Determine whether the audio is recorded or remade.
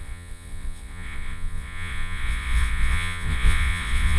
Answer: remade